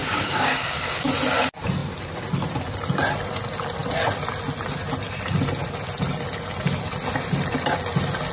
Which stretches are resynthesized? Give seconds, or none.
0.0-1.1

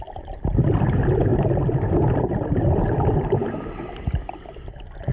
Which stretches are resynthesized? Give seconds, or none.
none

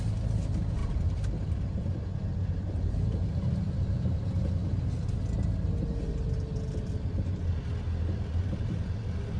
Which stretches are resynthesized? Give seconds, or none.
none